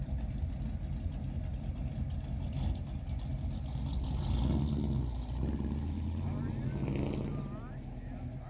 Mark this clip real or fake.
real